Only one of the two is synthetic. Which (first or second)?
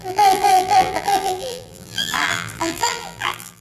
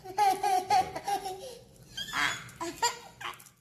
first